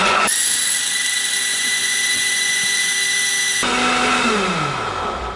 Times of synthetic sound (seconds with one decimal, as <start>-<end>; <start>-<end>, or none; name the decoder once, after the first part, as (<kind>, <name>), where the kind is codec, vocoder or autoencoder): 0.0-0.6 (vocoder, Vocos); 1.5-2.9